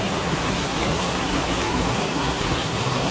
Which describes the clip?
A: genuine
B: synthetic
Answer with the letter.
B